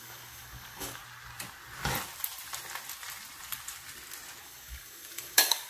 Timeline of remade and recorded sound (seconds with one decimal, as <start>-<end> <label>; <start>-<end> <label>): 0.0-1.0 remade; 1.0-4.4 recorded; 4.4-5.7 remade